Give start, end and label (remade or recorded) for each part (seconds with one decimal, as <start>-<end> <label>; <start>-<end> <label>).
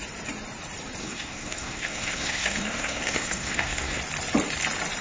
0.0-1.0 recorded; 1.0-4.0 remade; 4.0-5.0 recorded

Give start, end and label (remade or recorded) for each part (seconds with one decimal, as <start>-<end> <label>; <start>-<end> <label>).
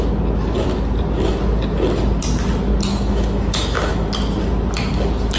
0.0-2.9 recorded; 2.9-4.1 remade; 4.1-5.4 recorded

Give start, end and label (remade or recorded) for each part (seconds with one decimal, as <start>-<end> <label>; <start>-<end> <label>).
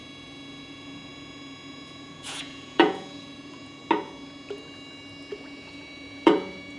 0.0-0.6 recorded; 0.6-3.8 remade; 3.8-5.3 recorded; 5.3-6.8 remade